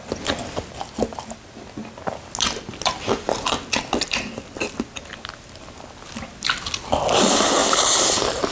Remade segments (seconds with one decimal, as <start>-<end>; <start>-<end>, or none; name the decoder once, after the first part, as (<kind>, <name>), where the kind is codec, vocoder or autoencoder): none